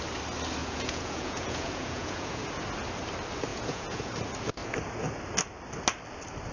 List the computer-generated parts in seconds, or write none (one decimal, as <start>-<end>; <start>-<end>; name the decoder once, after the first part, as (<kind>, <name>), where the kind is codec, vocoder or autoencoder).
0.6-2.4 (vocoder, Vocos); 3.5-4.1